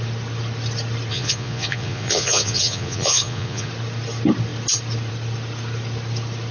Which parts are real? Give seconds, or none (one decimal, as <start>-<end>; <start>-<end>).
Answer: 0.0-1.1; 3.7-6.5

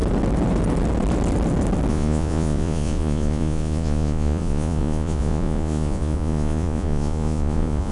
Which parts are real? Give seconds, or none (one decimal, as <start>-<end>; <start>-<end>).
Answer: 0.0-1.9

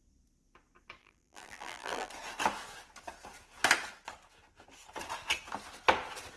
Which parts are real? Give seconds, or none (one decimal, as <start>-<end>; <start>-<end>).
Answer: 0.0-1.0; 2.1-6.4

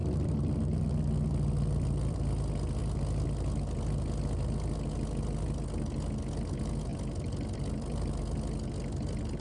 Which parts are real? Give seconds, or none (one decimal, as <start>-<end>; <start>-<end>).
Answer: 2.3-6.9; 8.2-9.4

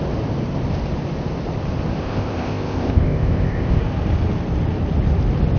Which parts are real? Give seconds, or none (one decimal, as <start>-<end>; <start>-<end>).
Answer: 0.0-2.0; 3.8-5.6

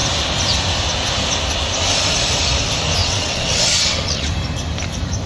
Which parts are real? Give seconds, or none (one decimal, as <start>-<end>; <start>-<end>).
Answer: 0.0-3.0; 4.3-5.3

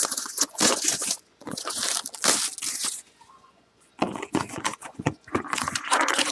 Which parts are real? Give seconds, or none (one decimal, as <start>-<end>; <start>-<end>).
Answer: 1.8-2.7

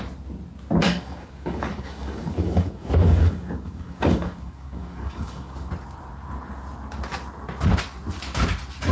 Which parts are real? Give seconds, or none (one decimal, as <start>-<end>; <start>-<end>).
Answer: 0.0-0.8; 5.7-8.9